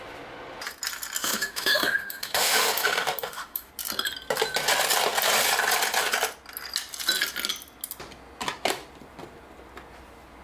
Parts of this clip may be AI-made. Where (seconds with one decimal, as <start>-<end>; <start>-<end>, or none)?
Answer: 1.2-3.7